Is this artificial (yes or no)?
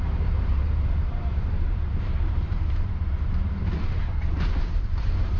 yes